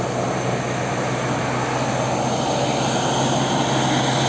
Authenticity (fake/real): real